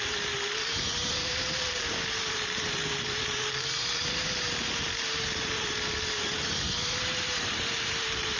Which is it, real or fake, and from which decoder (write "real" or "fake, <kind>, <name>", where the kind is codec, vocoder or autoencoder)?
fake, vocoder, BigVGAN v2